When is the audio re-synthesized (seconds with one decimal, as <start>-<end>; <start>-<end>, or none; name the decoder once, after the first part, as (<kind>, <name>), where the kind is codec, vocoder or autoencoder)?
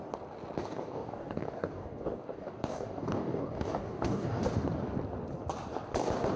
0.6-4.4 (codec, DAC)